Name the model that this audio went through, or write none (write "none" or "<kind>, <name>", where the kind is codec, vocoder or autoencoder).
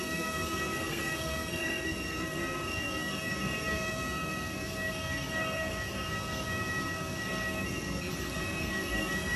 codec, SNAC